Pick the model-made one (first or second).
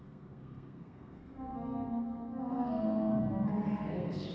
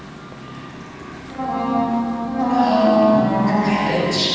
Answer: first